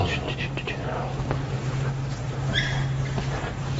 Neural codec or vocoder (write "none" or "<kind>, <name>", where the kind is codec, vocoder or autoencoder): none